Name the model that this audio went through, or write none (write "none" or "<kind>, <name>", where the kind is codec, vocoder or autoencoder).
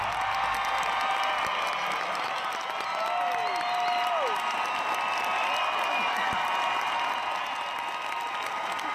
none